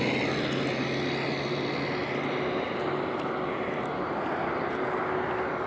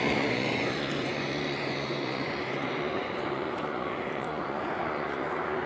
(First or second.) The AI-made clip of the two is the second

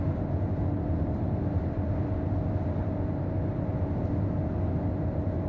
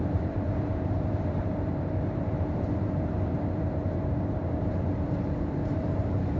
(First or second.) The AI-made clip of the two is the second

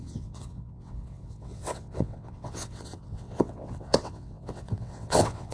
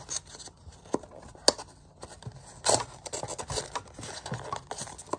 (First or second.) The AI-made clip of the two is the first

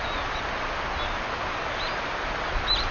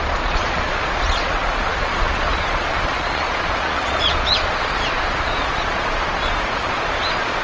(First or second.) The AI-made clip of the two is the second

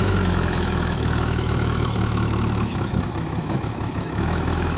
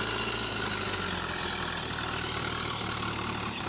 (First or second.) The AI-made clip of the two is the first